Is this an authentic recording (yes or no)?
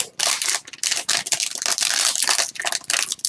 yes